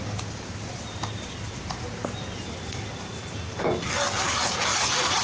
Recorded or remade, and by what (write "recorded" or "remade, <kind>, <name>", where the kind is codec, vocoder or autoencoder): recorded